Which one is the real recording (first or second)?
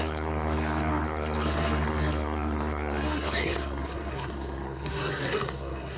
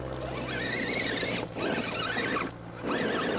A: second